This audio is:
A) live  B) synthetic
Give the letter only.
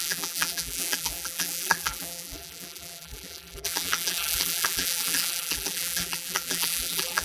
B